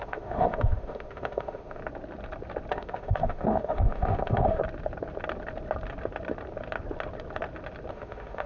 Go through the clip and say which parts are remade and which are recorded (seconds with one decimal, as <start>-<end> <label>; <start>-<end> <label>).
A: 0.0-1.8 remade; 1.8-2.7 recorded; 2.7-4.6 remade; 4.6-7.9 recorded; 7.9-8.5 remade